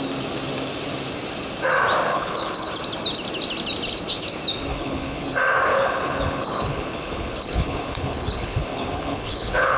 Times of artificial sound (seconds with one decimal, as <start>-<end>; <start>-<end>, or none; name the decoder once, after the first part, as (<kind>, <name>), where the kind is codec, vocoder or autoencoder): 2.1-2.7 (codec, HILCodec); 4.7-5.3; 5.7-9.8